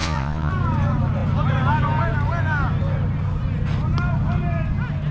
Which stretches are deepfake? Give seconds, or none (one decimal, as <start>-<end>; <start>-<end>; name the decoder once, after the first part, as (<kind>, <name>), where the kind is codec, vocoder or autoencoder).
0.0-0.5 (vocoder, Vocos)